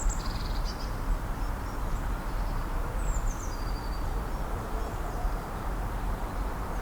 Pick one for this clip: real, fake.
fake